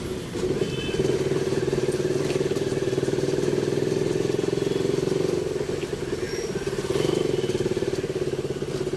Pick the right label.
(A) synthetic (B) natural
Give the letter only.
B